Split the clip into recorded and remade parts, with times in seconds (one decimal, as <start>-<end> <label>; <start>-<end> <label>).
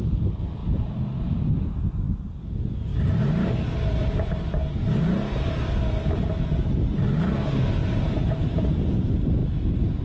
0.0-0.6 recorded; 0.6-1.4 remade; 1.4-2.9 recorded; 2.9-5.7 remade; 5.7-7.8 recorded; 7.8-8.4 remade; 8.4-10.0 recorded